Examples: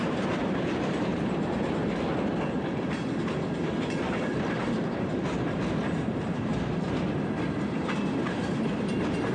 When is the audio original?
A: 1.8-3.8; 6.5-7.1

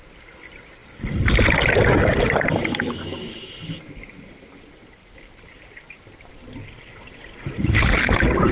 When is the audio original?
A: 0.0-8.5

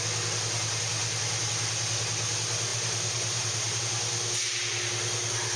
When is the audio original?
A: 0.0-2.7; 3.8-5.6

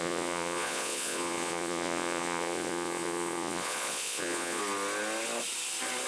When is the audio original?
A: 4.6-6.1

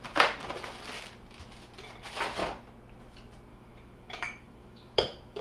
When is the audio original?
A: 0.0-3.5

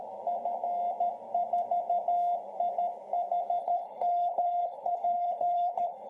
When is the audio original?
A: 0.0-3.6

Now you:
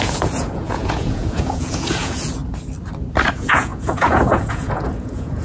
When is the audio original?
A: 2.4-3.3

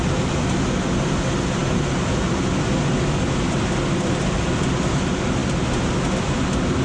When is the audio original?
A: 0.0-6.8